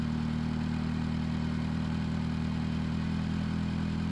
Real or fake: fake